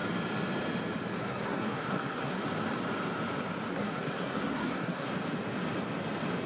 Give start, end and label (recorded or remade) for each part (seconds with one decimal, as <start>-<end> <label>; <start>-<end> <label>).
0.0-1.2 recorded; 1.2-2.4 remade; 2.4-3.7 recorded; 3.7-5.1 remade; 5.1-6.5 recorded